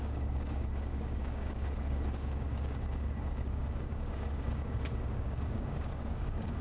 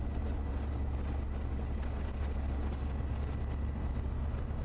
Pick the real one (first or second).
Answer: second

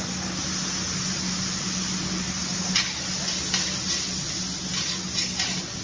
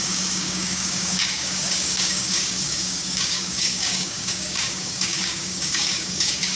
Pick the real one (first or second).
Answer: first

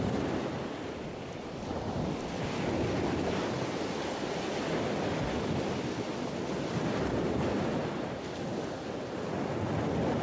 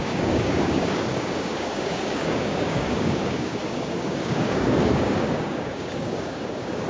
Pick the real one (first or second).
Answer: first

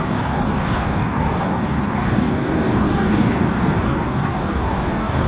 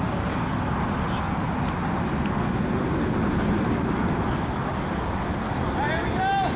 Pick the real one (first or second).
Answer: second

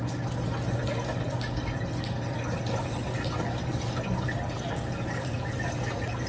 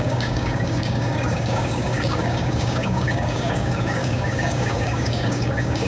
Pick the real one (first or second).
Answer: first